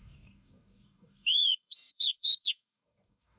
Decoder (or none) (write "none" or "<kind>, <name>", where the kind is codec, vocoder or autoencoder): codec, DAC